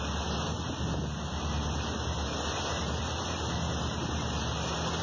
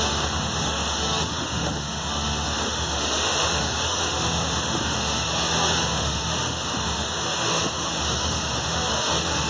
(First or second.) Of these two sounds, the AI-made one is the second